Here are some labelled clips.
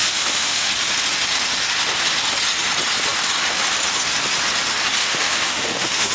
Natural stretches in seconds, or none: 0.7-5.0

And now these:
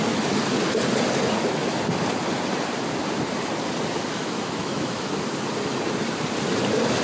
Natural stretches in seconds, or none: 0.0-4.2; 5.1-7.0